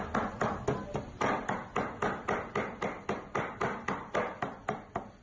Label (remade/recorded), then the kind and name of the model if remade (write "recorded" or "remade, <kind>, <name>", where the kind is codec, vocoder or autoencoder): recorded